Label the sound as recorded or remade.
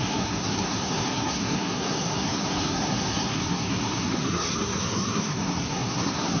remade